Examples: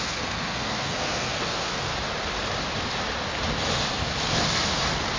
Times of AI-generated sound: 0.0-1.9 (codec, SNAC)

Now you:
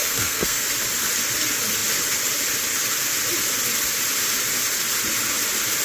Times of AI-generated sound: 0.0-0.7 (codec, SNAC)

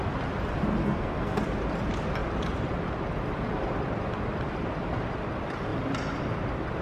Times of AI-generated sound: 0.8-1.4 (codec, SNAC)

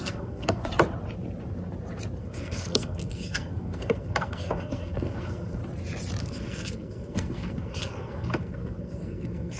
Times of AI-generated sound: 0.0-0.6 (codec, SNAC); 2.2-5.6; 6.2-9.6

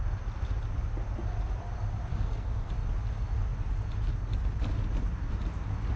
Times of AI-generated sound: 2.1-2.7 (codec, SNAC)

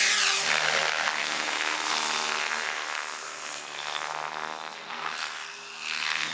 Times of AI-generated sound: 1.2-1.9 (codec, SNAC); 2.4-6.3